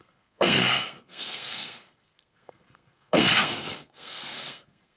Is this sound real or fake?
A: fake